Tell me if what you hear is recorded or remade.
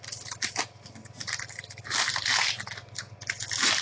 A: recorded